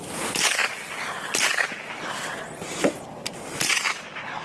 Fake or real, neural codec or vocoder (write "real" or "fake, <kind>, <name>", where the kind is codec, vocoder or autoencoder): real